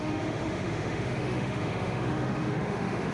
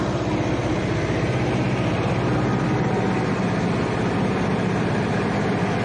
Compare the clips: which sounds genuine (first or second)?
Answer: second